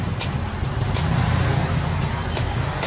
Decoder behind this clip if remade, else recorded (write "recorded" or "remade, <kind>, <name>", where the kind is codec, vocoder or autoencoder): recorded